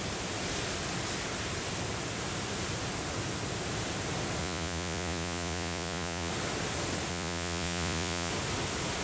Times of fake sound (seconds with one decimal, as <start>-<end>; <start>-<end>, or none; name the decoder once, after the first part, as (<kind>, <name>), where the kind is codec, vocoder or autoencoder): 4.4-6.3 (vocoder, Vocos); 7.1-8.3